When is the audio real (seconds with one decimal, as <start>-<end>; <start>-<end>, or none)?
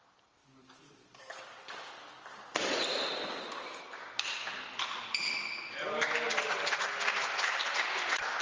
0.0-0.4; 1.6-8.4